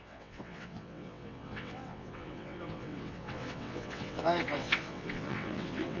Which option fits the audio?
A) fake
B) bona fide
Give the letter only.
A